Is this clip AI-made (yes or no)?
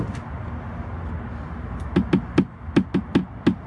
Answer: no